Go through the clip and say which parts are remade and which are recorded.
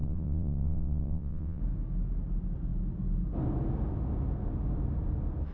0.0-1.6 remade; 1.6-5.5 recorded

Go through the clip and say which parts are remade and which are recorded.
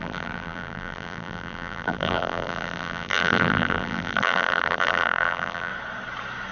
0.0-5.7 remade; 5.7-6.5 recorded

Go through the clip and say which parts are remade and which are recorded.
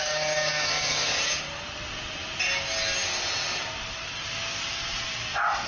0.0-1.1 remade; 1.1-5.7 recorded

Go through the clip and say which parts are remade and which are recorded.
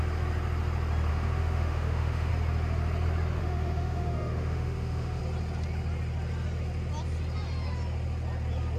0.0-1.1 recorded; 1.1-2.3 remade; 2.3-3.4 recorded; 3.4-5.2 remade; 5.2-8.8 recorded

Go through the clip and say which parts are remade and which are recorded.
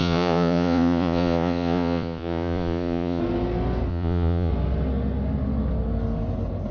0.0-3.2 remade; 3.2-3.9 recorded; 3.9-4.5 remade; 4.5-6.7 recorded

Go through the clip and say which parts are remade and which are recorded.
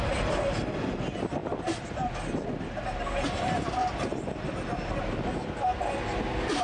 0.0-6.6 recorded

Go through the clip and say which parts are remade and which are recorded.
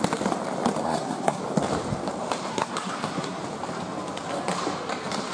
0.0-0.8 recorded; 0.8-1.4 remade; 1.4-2.5 recorded; 2.5-3.4 remade; 3.4-5.3 recorded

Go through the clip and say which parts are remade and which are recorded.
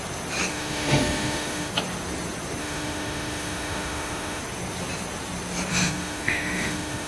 0.0-0.5 recorded; 0.5-1.7 remade; 1.7-2.6 recorded; 2.6-4.4 remade; 4.4-5.7 recorded; 5.7-7.1 remade